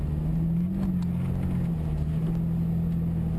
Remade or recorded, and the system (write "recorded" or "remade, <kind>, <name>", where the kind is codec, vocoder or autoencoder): recorded